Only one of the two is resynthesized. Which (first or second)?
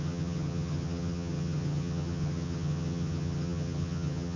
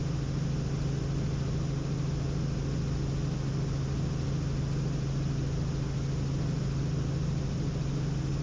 first